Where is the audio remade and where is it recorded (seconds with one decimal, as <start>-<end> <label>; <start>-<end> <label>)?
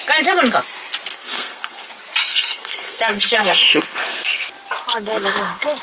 0.0-1.1 recorded; 1.1-1.9 remade; 1.9-2.3 recorded; 2.3-4.5 remade; 4.5-4.9 recorded; 4.9-5.8 remade